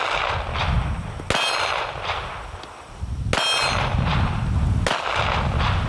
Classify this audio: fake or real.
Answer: real